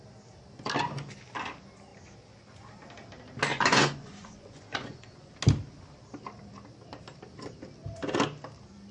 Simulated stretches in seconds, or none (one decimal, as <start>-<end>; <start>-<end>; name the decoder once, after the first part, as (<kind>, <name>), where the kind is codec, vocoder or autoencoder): 3.5-5.3 (vocoder, Vocos)